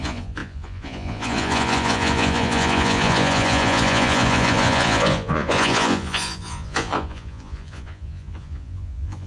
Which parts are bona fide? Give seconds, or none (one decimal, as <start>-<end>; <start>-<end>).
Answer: none